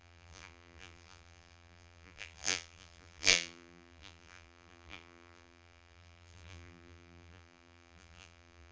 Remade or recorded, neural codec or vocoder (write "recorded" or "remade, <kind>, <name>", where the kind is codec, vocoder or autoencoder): remade, vocoder, BigVGAN v2